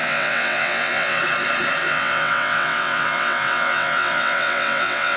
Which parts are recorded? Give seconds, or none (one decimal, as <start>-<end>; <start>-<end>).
1.2-1.8